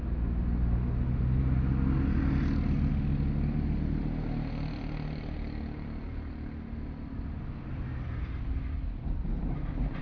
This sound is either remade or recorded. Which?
recorded